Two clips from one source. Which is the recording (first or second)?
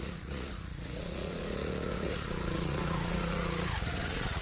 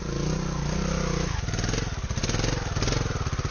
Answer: second